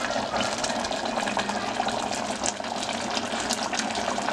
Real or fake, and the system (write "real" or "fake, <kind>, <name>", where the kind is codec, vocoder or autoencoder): real